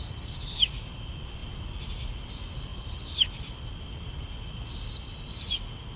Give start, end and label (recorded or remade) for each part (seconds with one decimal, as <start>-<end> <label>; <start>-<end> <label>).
0.0-6.0 recorded